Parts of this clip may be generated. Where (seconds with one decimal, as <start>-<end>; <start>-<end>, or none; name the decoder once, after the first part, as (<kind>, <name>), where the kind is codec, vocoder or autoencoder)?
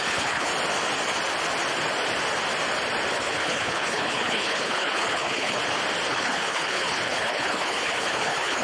0.0-0.5 (codec, HILCodec); 3.1-5.6; 6.1-8.6